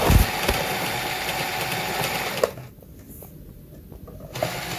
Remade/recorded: recorded